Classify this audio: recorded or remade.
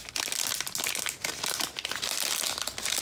recorded